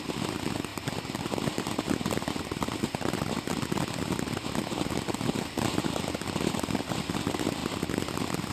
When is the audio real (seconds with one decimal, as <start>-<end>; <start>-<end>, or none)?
0.0-8.5